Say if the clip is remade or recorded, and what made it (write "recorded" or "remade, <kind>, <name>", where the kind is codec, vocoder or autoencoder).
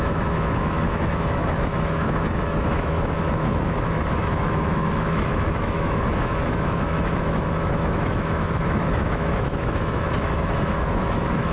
remade, autoencoder, DAC-VAE